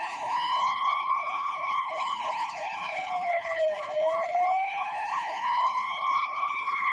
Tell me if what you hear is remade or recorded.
remade